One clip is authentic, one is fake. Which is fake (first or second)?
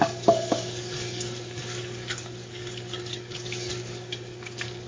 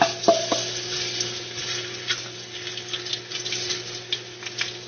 first